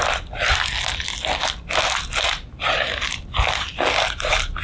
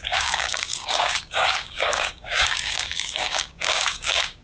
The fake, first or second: second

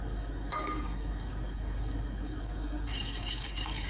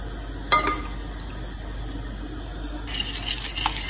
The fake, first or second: first